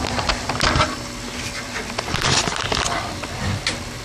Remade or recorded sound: recorded